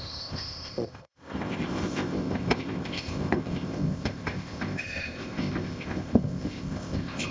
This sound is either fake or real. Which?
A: fake